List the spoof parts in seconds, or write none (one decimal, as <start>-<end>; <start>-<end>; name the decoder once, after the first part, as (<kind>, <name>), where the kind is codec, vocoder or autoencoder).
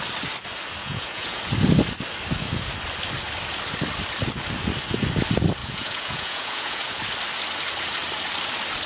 0.8-1.4 (vocoder, Vocos); 5.6-7.0